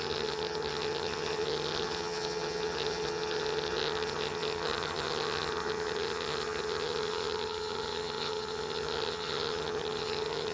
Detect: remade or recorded remade